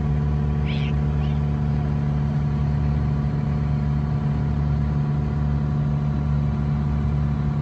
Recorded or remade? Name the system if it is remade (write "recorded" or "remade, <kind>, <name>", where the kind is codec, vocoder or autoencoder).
recorded